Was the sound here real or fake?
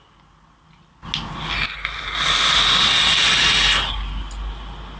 real